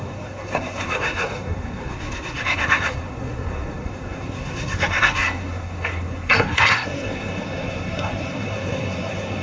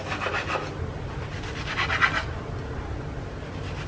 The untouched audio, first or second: second